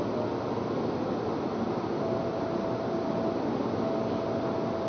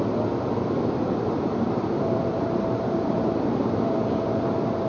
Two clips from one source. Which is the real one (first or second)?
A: first